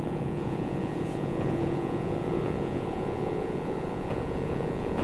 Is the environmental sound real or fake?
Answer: fake